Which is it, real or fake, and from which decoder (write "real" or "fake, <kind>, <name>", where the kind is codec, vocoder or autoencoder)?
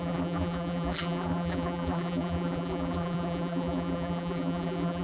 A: fake, vocoder, BigVGAN v2